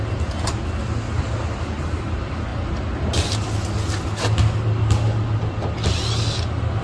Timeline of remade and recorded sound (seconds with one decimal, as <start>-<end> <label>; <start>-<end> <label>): 0.0-6.8 recorded